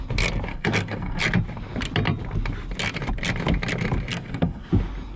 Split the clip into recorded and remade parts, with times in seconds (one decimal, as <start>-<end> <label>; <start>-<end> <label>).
0.0-0.5 recorded; 0.5-1.2 remade; 1.2-4.1 recorded; 4.1-4.7 remade; 4.7-5.2 recorded